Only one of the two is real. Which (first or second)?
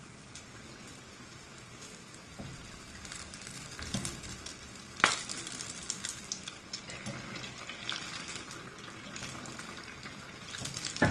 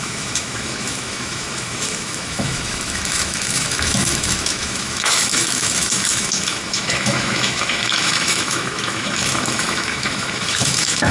first